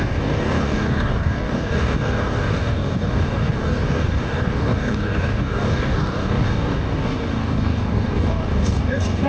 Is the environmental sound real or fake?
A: fake